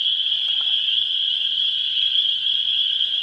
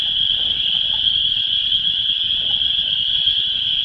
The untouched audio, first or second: second